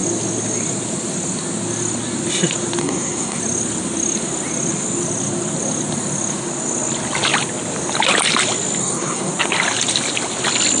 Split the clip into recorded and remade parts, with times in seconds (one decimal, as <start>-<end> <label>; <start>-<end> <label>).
0.0-2.8 recorded; 2.8-3.4 remade; 3.4-8.8 recorded; 8.8-9.3 remade; 9.3-10.8 recorded